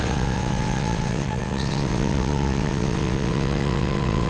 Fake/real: fake